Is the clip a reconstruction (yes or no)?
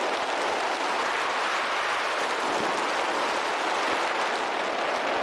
no